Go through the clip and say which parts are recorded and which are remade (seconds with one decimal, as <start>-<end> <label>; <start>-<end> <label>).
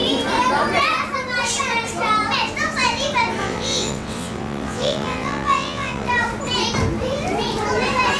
0.0-3.4 recorded; 3.4-6.1 remade; 6.1-8.2 recorded